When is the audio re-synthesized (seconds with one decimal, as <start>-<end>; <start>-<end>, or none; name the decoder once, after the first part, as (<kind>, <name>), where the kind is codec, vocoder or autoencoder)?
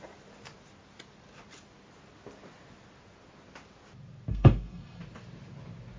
4.3-5.0 (codec, SNAC)